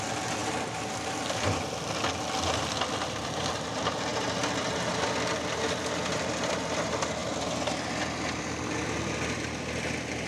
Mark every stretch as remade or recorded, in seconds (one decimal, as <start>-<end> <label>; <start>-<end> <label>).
0.0-0.4 recorded; 0.4-1.7 remade; 1.7-7.2 recorded; 7.2-7.9 remade; 7.9-10.3 recorded